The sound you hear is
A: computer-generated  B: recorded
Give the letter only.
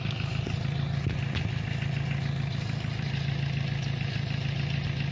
B